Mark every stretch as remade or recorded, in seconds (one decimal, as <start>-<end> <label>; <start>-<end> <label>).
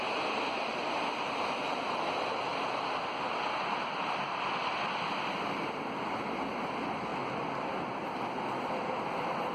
0.0-9.5 recorded